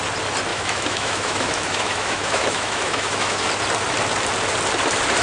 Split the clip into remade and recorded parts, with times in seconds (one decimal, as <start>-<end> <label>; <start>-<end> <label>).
0.0-0.5 recorded; 0.5-3.5 remade; 3.5-5.2 recorded

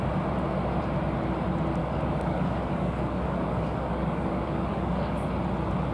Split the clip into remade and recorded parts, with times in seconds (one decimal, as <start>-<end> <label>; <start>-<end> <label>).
0.0-1.8 recorded; 1.8-5.3 remade; 5.3-5.9 recorded

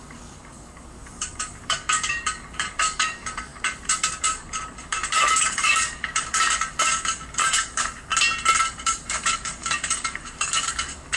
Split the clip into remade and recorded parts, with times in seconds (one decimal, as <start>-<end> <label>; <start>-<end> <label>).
0.0-8.1 remade; 8.1-8.6 recorded; 8.6-11.2 remade

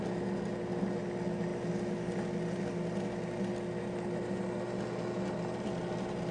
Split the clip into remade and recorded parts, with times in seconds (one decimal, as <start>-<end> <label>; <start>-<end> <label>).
0.0-6.3 recorded

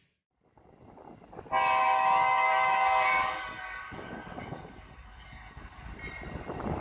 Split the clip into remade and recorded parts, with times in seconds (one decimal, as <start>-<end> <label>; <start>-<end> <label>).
0.0-1.8 recorded; 1.8-5.9 remade; 5.9-6.8 recorded